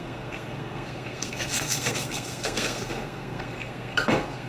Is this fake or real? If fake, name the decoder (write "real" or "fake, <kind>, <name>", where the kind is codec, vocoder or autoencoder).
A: fake, codec, SNAC